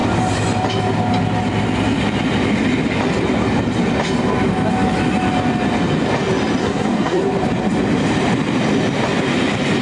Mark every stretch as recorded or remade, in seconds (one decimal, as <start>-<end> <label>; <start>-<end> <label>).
0.0-6.6 recorded; 6.6-7.2 remade; 7.2-9.8 recorded